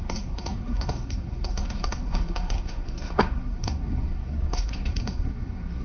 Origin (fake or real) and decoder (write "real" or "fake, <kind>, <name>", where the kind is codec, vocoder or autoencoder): fake, codec, SNAC